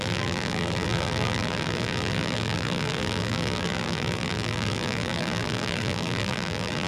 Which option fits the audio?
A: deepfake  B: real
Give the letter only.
A